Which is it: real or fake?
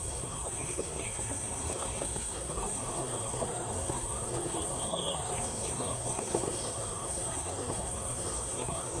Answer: fake